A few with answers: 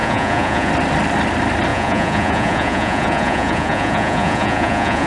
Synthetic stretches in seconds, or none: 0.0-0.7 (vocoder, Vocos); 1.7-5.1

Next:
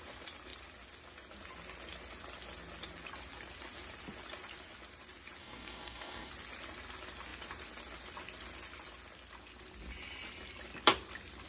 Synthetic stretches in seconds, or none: 5.4-6.3 (codec, DAC)

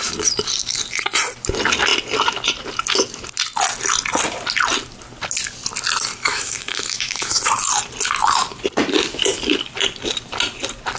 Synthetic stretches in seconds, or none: 6.3-7.4 (autoencoder, DAC-VAE)

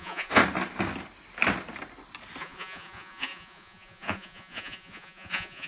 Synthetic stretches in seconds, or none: 0.0-0.4 (vocoder, Vocos); 2.4-5.7

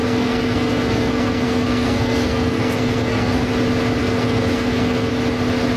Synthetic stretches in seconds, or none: 0.0-3.5 (codec, SNAC); 4.0-5.1

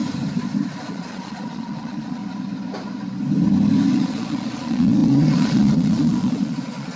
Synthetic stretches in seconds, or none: 0.9-2.2 (vocoder, Vocos); 3.9-7.0